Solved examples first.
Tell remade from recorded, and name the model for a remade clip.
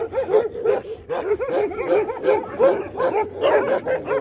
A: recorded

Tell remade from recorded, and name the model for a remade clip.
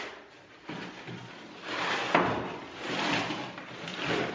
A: recorded